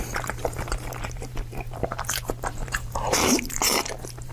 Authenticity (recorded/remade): remade